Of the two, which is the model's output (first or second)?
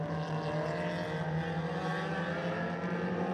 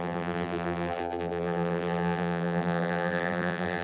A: second